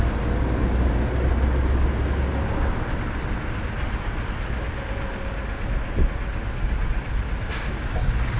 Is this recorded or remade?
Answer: recorded